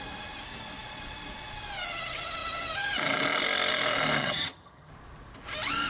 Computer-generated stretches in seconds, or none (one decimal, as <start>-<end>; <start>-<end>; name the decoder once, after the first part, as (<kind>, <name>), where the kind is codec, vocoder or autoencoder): 4.2-4.9 (vocoder, HiFi-GAN)